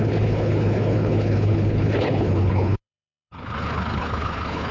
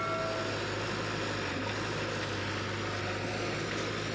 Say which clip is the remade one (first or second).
first